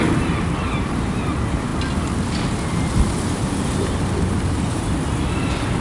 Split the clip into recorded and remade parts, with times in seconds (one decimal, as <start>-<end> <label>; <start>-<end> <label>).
0.0-5.8 recorded